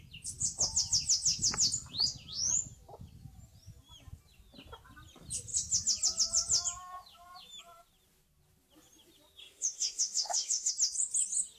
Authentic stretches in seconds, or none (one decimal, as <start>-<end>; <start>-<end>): 0.0-9.4; 10.7-11.6